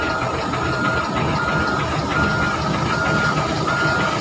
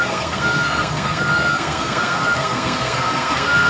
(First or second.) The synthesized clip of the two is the second